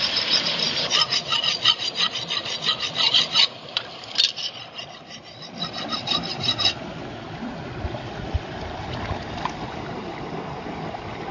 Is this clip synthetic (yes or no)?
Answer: yes